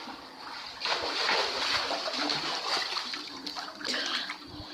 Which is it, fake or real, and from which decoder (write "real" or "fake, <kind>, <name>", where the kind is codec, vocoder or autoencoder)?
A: fake, vocoder, BigVGAN v2